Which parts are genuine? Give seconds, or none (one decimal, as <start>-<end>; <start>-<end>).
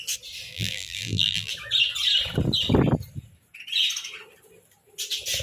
0.0-0.5; 1.5-5.4